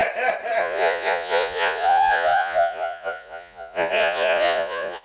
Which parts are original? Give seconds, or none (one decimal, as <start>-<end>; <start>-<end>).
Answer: 0.0-0.6